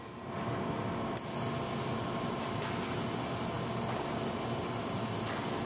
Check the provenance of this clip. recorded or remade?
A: recorded